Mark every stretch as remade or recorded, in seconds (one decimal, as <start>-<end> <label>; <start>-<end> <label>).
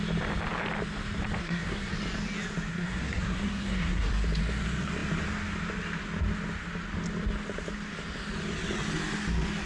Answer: 0.0-1.4 recorded; 1.4-1.9 remade; 1.9-2.7 recorded; 2.7-4.1 remade; 4.1-9.7 recorded